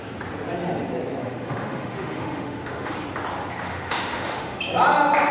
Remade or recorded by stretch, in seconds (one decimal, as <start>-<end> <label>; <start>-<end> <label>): 0.0-1.2 recorded; 1.2-2.9 remade; 2.9-3.7 recorded; 3.7-4.6 remade; 4.6-5.3 recorded

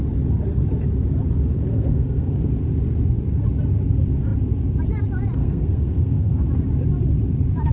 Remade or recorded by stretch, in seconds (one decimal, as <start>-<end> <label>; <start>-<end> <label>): 0.0-1.7 recorded; 1.7-2.5 remade; 2.5-5.4 recorded; 5.4-6.5 remade; 6.5-7.7 recorded

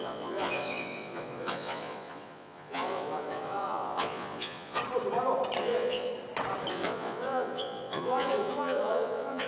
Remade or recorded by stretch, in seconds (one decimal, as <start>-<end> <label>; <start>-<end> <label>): 0.0-4.8 remade; 4.8-5.6 recorded; 5.6-6.1 remade; 6.1-6.7 recorded; 6.7-9.5 remade

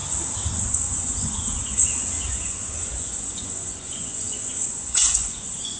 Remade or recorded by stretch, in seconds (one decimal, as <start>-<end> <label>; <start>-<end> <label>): 0.0-0.7 recorded; 0.7-1.8 remade; 1.8-2.3 recorded; 2.3-5.8 remade

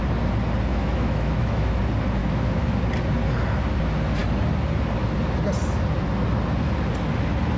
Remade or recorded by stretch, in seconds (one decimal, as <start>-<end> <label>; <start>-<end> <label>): 0.0-0.7 recorded; 0.7-1.8 remade; 1.8-2.2 recorded; 2.2-2.8 remade; 2.8-7.6 recorded

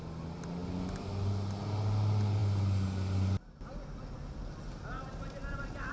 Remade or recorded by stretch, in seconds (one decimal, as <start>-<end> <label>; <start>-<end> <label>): 0.0-5.9 recorded

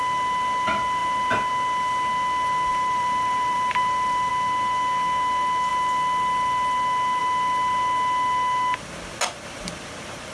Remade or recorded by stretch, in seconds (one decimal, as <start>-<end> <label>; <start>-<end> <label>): 0.0-2.7 recorded; 2.7-4.3 remade; 4.3-10.3 recorded